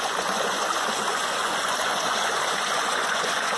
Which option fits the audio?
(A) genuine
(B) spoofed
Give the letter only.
B